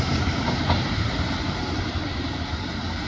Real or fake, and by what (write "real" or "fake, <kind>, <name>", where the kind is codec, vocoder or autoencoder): fake, vocoder, BigVGAN v2